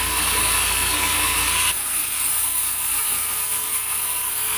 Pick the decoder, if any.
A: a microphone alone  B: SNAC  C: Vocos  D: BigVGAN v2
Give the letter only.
B